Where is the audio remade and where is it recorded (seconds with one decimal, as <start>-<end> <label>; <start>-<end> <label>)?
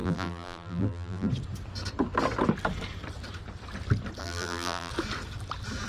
0.0-1.3 remade; 1.3-4.2 recorded; 4.2-4.9 remade; 4.9-5.9 recorded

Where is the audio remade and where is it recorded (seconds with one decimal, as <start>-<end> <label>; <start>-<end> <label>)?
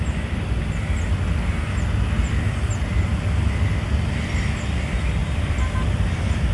0.0-5.2 recorded; 5.2-6.5 remade